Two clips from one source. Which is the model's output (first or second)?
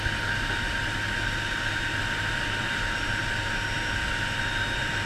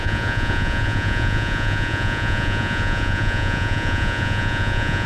second